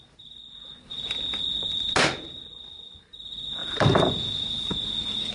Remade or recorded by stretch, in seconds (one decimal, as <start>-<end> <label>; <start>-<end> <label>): 0.0-3.6 recorded; 3.6-5.3 remade